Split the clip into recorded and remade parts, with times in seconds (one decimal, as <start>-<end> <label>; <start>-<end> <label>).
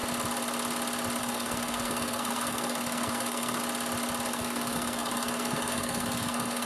0.0-1.2 recorded; 1.2-3.6 remade; 3.6-4.3 recorded; 4.3-6.7 remade